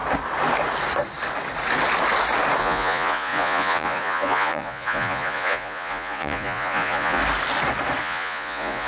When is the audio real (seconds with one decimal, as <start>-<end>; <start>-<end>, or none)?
0.0-2.6; 7.2-8.0